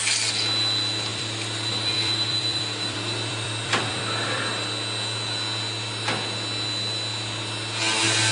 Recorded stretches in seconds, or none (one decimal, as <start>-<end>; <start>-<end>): 0.0-1.1; 4.5-8.3